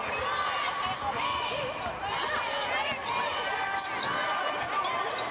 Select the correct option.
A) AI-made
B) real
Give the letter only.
B